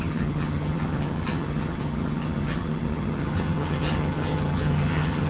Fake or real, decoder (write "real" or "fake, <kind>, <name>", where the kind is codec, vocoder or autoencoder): fake, vocoder, HiFi-GAN